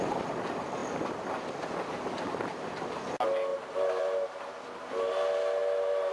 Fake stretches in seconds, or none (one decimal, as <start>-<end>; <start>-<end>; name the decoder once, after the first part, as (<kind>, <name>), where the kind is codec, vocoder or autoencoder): none